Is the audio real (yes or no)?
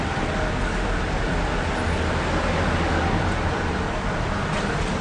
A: yes